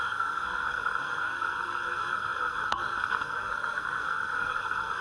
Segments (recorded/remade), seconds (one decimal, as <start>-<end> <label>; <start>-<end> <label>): 0.0-5.0 remade